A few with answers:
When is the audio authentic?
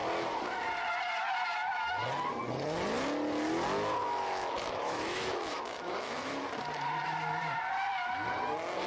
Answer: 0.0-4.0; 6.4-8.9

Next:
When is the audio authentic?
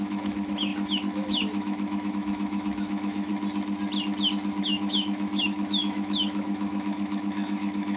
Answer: 3.3-4.6